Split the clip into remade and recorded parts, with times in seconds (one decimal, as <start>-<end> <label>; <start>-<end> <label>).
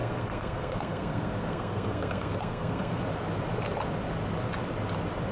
0.0-3.0 remade; 3.0-5.3 recorded